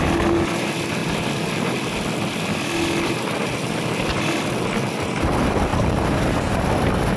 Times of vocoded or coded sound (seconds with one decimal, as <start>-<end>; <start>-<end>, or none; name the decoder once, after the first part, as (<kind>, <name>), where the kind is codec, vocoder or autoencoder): 5.7-6.6 (vocoder, BigVGAN v2)